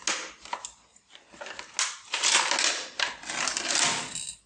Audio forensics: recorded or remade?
recorded